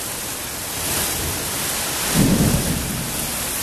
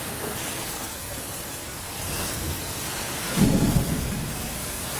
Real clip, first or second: first